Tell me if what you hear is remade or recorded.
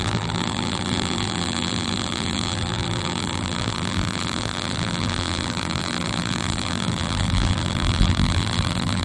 remade